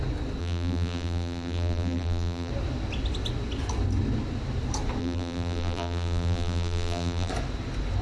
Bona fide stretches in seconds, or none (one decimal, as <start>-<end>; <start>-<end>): 0.0-0.4; 2.5-5.0; 7.3-8.0